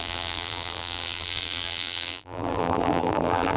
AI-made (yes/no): yes